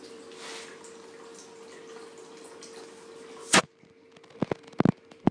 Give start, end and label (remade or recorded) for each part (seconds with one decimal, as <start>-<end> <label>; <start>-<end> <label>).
0.0-5.3 recorded